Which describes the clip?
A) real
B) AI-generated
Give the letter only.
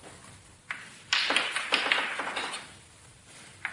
A